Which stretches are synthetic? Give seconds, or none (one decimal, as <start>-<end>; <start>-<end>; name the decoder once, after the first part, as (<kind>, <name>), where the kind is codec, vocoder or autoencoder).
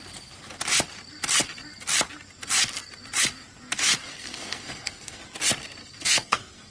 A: 4.1-5.2 (codec, SNAC); 5.8-6.7